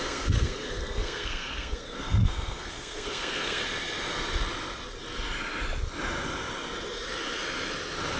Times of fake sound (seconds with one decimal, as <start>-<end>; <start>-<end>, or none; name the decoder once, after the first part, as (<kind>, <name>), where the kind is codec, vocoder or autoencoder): 0.0-3.6 (codec, SNAC)